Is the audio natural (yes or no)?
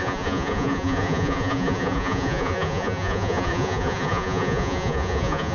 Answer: no